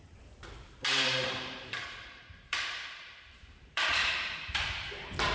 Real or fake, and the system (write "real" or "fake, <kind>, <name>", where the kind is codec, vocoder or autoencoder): fake, vocoder, BigVGAN v2